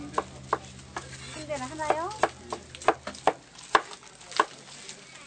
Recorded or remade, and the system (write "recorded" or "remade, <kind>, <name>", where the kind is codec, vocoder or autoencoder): recorded